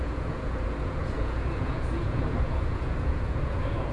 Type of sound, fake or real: fake